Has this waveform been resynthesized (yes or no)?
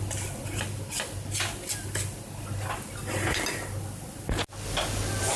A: no